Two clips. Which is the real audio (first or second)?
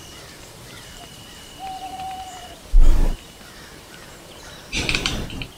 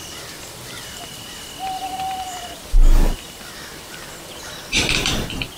second